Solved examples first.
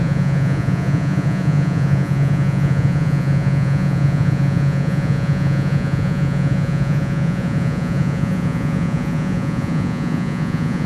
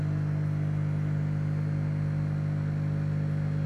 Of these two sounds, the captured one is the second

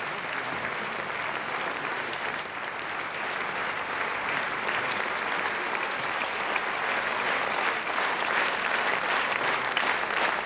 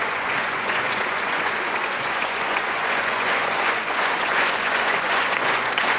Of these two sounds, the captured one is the first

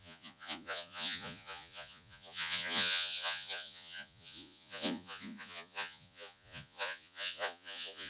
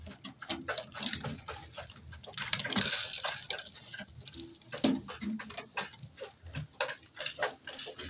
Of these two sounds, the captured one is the second